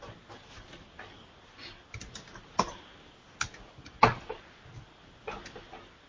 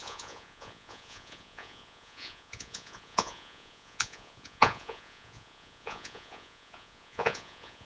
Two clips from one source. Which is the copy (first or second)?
second